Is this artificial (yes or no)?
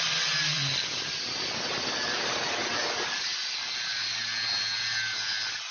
no